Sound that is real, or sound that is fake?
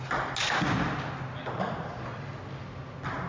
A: real